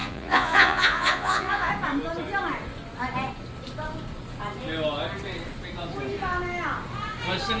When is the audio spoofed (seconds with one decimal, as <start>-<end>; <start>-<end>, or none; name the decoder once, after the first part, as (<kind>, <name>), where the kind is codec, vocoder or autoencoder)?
0.0-1.7 (vocoder, Vocos)